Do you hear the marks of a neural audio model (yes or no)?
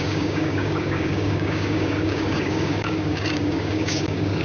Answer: yes